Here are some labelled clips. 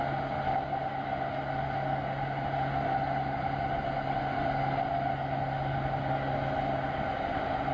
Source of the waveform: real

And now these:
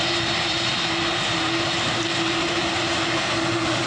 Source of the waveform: fake